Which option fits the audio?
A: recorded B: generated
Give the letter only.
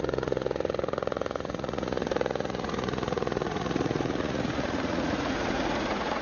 B